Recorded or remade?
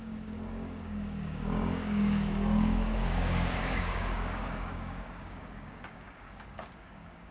remade